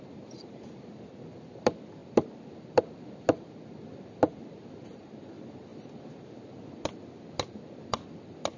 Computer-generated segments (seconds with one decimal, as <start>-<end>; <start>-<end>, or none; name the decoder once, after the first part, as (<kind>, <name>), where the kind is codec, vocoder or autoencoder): none